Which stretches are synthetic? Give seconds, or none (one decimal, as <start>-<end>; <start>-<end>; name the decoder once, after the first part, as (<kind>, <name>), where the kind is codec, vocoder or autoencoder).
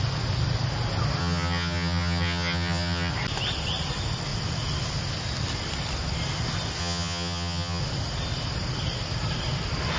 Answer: 1.2-3.1 (vocoder, HiFi-GAN); 6.8-7.8